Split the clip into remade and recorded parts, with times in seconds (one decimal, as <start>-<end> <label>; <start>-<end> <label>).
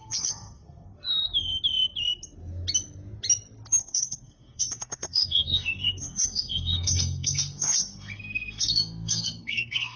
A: 0.0-0.9 remade; 0.9-3.8 recorded; 3.8-10.0 remade